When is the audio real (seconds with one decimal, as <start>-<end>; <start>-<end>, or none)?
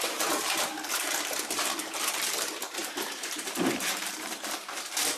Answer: none